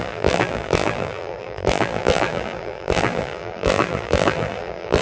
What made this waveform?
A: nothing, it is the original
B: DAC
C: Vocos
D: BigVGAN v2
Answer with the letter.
D